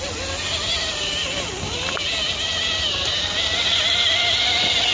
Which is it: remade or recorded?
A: recorded